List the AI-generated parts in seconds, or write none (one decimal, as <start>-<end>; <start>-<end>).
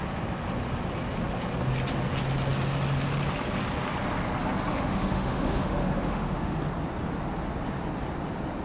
4.7-6.6